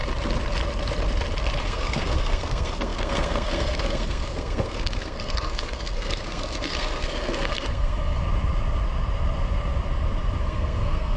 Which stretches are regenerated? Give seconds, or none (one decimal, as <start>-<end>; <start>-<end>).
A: 1.6-8.2; 10.4-11.2